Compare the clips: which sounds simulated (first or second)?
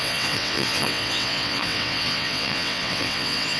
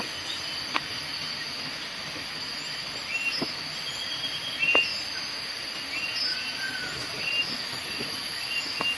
first